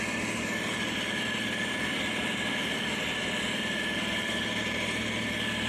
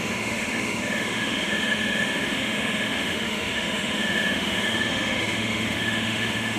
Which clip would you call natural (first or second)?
first